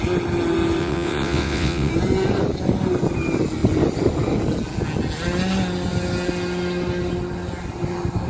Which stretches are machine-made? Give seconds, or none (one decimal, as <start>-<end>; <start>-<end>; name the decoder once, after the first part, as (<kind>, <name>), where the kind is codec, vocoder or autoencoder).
0.8-1.9 (vocoder, WaveNeXt)

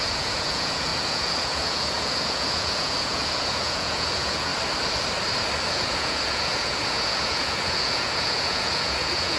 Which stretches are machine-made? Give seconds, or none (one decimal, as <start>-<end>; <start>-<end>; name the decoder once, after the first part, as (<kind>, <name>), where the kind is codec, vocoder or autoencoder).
0.0-4.5 (vocoder, Vocos); 5.7-9.4